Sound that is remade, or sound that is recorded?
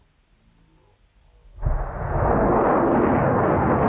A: recorded